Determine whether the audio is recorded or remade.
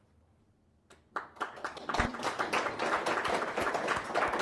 recorded